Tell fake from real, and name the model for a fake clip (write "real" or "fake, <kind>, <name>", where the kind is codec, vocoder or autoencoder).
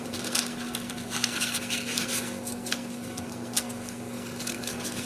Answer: fake, codec, SNAC